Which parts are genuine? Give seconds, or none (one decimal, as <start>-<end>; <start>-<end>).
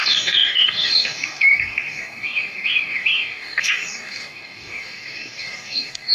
none